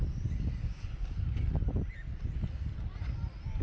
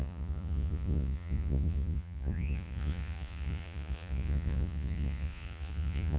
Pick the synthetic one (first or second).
second